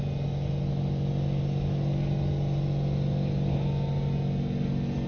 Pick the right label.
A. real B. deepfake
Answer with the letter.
A